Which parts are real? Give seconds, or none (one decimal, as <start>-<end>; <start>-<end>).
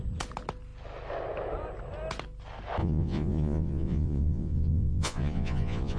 0.0-2.8